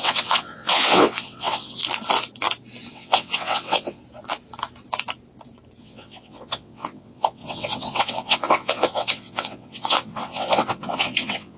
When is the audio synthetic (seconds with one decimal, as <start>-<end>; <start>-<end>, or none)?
0.0-1.8; 2.9-4.0; 5.8-11.6